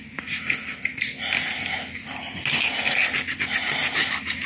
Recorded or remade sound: recorded